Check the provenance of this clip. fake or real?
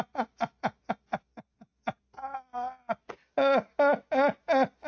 real